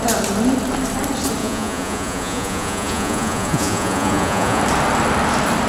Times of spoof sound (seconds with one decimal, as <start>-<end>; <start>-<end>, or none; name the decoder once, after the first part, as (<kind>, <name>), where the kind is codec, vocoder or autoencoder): 1.4-4.6 (vocoder, Vocos)